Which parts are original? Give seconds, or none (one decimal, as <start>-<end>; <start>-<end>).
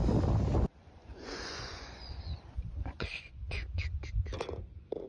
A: 0.0-0.8; 4.0-5.1